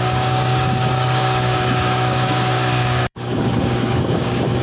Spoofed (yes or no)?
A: yes